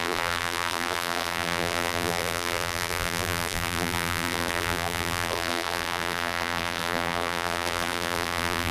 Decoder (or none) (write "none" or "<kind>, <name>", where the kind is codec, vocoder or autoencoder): vocoder, BigVGAN v2